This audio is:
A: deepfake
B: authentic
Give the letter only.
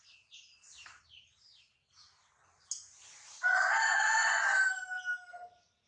B